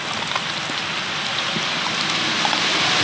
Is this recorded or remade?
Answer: recorded